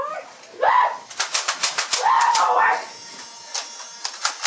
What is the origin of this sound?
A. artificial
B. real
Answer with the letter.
B